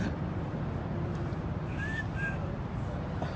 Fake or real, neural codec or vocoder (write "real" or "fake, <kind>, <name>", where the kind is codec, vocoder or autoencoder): real